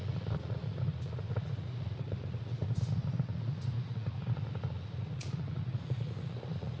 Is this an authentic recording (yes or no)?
no